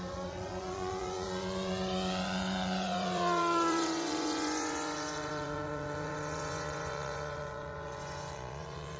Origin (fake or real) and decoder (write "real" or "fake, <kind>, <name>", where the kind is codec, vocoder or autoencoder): fake, vocoder, Vocos